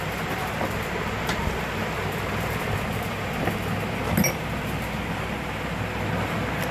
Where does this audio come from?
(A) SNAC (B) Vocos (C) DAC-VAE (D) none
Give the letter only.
D